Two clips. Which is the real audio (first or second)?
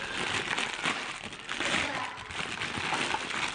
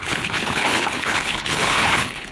first